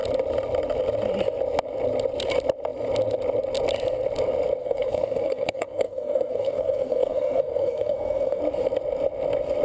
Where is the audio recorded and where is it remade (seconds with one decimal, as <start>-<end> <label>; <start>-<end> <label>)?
0.0-4.6 recorded; 4.6-8.4 remade; 8.4-9.6 recorded